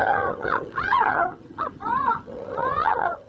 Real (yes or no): no